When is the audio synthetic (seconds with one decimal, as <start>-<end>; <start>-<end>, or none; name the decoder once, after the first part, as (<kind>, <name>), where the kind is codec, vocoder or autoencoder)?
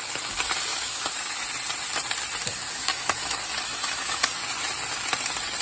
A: 0.7-1.4 (autoencoder, DAC-VAE); 2.4-4.4